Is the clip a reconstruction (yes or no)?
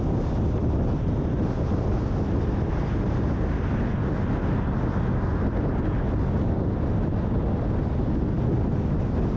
no